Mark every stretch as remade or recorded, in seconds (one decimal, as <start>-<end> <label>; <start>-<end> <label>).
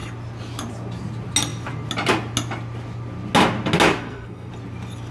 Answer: 0.0-4.0 recorded; 4.0-4.5 remade; 4.5-5.1 recorded